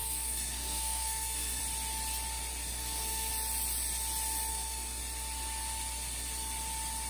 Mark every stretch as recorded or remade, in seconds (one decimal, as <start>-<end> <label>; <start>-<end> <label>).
0.0-1.6 remade; 1.6-2.7 recorded; 2.7-3.3 remade; 3.3-4.5 recorded; 4.5-5.0 remade; 5.0-7.1 recorded